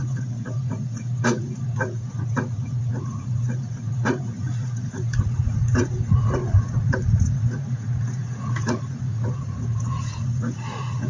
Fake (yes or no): yes